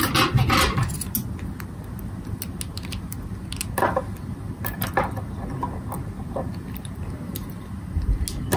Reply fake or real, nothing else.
real